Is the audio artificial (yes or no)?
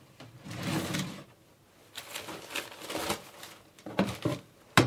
no